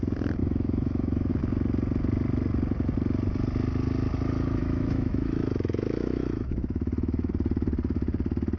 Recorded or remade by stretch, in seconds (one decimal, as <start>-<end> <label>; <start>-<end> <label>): 0.0-0.4 recorded; 0.4-1.3 remade; 1.3-4.6 recorded; 4.6-7.3 remade; 7.3-8.6 recorded

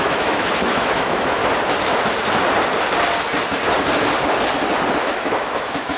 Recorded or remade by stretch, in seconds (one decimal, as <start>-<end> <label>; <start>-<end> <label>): 0.0-1.4 remade; 1.4-5.0 recorded; 5.0-6.0 remade

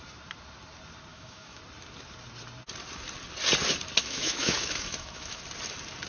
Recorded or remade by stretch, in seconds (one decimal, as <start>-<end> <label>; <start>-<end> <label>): 0.0-1.1 recorded; 1.1-1.6 remade; 1.6-4.0 recorded; 4.0-5.4 remade; 5.4-6.1 recorded

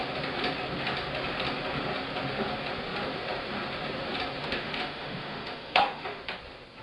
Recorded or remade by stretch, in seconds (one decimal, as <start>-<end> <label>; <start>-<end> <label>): 0.0-4.4 recorded; 4.4-6.2 remade; 6.2-6.8 recorded

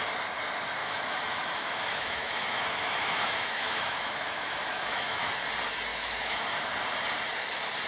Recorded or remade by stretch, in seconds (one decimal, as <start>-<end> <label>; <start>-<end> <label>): 0.0-0.8 recorded; 0.8-5.3 remade; 5.3-5.9 recorded; 5.9-6.7 remade; 6.7-7.9 recorded

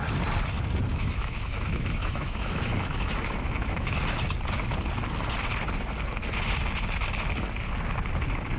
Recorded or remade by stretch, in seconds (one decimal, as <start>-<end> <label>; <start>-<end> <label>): 0.0-0.9 recorded; 0.9-4.0 remade; 4.0-8.6 recorded

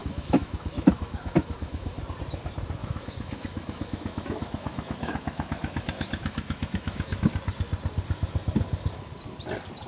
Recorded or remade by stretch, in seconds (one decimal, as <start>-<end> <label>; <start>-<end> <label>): 0.0-2.0 remade; 2.0-2.8 recorded; 2.8-7.2 remade; 7.2-9.9 recorded

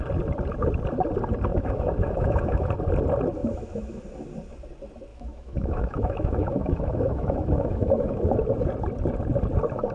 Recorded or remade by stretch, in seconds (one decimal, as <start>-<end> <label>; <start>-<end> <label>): 0.0-1.5 recorded; 1.5-2.7 remade; 2.7-3.4 recorded; 3.4-4.0 remade; 4.0-5.1 recorded; 5.1-8.4 remade; 8.4-9.9 recorded